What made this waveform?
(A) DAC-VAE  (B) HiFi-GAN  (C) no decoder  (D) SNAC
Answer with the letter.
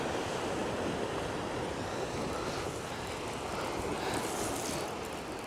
C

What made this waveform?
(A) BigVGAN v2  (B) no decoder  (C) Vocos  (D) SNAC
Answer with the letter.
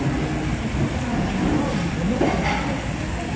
B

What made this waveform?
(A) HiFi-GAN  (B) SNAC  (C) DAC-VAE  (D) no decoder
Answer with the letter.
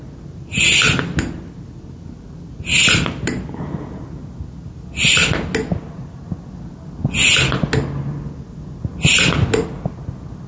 D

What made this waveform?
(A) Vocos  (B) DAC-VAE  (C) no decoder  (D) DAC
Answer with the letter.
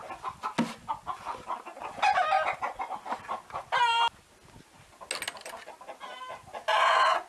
C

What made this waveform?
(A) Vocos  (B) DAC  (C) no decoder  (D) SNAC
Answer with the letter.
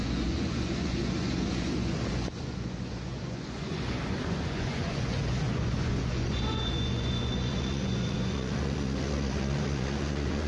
A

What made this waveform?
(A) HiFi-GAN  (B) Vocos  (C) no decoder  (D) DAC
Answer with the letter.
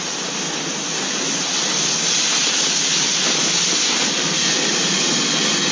C